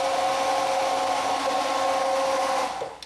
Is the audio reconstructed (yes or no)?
no